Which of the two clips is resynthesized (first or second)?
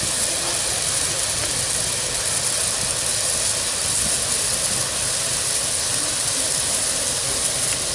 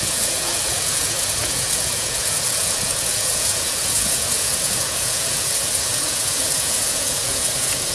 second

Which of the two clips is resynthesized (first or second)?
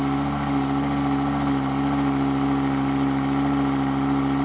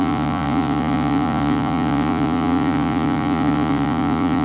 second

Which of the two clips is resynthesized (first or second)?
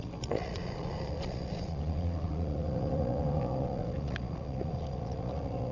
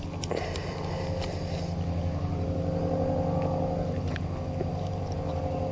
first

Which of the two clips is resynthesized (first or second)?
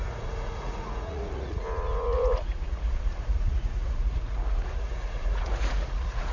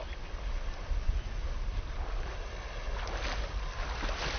first